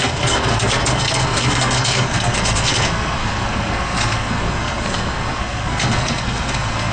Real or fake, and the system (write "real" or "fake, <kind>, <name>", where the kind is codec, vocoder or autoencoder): fake, codec, SNAC